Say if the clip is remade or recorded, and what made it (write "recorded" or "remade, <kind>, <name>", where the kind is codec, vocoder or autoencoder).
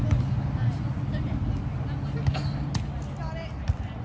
recorded